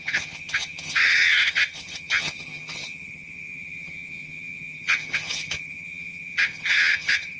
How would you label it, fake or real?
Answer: fake